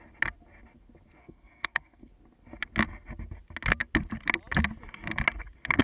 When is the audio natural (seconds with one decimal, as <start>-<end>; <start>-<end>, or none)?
0.0-1.2; 2.1-5.8